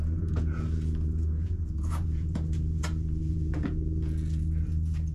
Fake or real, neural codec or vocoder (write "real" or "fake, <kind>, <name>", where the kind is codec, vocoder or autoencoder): fake, vocoder, Vocos